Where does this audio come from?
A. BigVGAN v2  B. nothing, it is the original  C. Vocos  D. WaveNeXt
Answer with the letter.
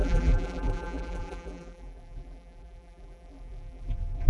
A